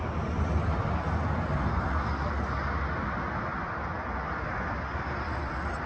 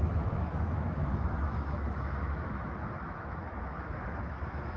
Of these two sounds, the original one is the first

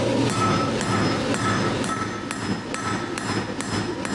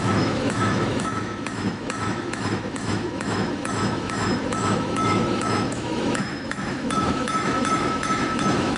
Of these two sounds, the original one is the first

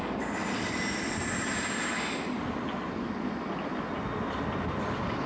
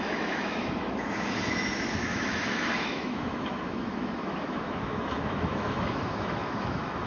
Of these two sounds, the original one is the first